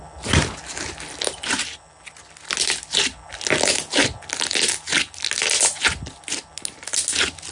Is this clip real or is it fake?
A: real